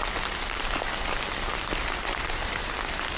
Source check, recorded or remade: recorded